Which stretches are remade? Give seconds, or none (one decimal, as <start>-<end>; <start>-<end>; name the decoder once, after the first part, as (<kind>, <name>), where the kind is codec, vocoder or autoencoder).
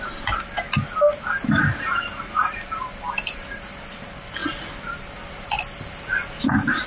none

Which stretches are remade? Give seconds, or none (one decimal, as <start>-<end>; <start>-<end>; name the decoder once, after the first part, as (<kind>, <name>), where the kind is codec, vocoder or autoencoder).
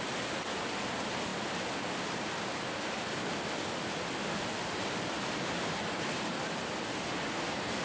none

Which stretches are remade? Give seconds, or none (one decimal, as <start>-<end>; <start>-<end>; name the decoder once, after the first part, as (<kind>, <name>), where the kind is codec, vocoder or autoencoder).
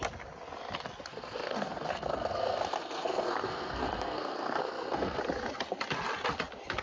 1.1-5.2 (codec, SNAC)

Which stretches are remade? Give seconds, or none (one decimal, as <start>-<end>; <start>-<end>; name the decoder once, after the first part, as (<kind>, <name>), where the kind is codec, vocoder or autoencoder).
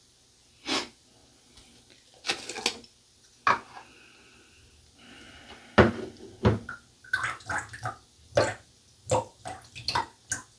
none